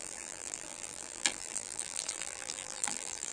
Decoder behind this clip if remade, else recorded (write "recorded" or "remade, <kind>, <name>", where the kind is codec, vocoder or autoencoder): remade, vocoder, BigVGAN v2